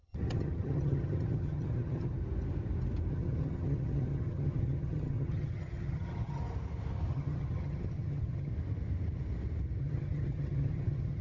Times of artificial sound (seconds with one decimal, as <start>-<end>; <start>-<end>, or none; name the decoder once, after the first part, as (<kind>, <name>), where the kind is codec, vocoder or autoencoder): 0.0-2.1 (vocoder, HiFi-GAN); 3.1-6.4; 7.1-8.5; 9.8-11.2